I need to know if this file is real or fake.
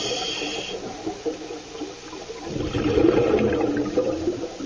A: real